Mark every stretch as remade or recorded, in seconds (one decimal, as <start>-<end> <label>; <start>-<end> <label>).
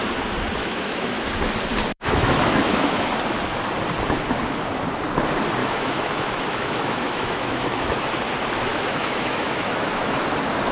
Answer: 0.0-0.6 recorded; 0.6-1.2 remade; 1.2-1.9 recorded; 1.9-3.0 remade; 3.0-5.6 recorded; 5.6-8.0 remade; 8.0-8.7 recorded; 8.7-10.2 remade; 10.2-10.7 recorded